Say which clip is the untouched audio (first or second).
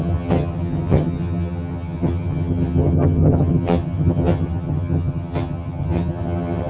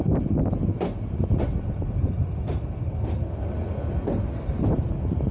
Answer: second